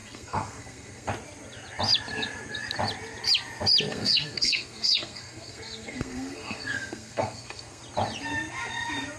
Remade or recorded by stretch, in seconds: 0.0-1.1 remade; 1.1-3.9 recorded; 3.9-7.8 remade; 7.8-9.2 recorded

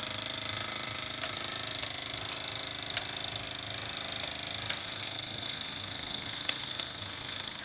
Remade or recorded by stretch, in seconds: 0.0-4.8 recorded; 4.8-7.6 remade

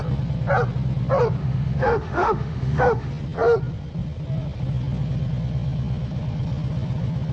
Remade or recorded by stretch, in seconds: 0.0-1.4 recorded; 1.4-3.1 remade; 3.1-7.3 recorded

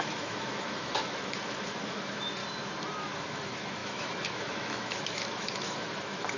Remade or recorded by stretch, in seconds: 0.0-2.4 remade; 2.4-3.0 recorded; 3.0-6.4 remade

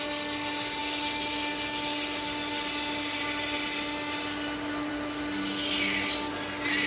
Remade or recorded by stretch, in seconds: 0.0-6.9 recorded

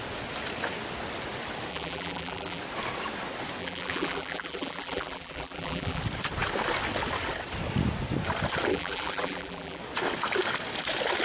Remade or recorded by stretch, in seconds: 0.0-1.7 recorded; 1.7-2.6 remade; 2.6-3.6 recorded; 3.6-6.0 remade; 6.0-8.7 recorded; 8.7-9.8 remade; 9.8-11.2 recorded

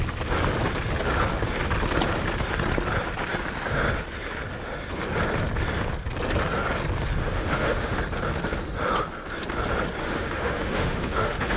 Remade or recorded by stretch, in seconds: 0.0-7.2 recorded; 7.2-8.0 remade; 8.0-10.0 recorded; 10.0-11.6 remade